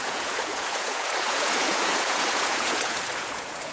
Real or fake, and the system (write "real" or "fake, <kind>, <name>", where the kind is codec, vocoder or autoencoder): fake, vocoder, Vocos